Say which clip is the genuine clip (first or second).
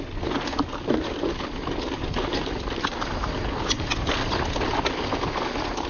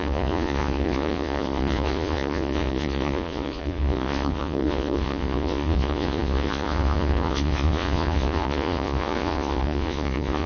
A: first